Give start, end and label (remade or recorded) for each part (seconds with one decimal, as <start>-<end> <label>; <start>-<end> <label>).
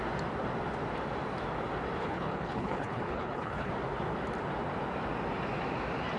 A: 0.0-2.0 recorded; 2.0-3.7 remade; 3.7-6.2 recorded